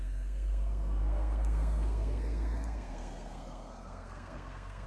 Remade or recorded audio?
remade